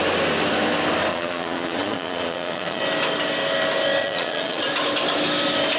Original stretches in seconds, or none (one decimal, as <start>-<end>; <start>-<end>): 0.0-1.1; 2.8-4.0; 4.7-5.8